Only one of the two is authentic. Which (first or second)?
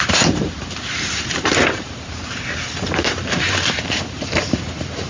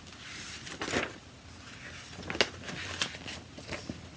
second